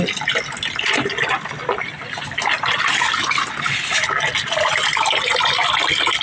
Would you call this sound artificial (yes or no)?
no